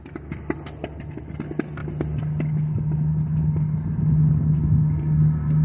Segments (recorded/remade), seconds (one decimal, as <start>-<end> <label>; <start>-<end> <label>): 0.0-5.6 recorded